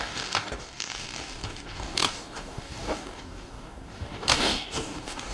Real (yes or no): no